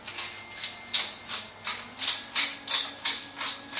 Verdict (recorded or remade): recorded